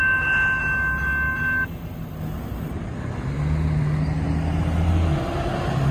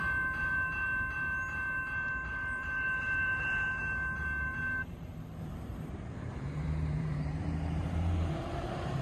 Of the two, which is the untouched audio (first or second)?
first